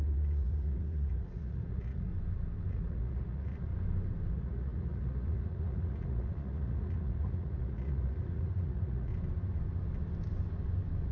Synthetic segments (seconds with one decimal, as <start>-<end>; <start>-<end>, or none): 0.0-2.1; 2.7-3.7; 4.3-9.1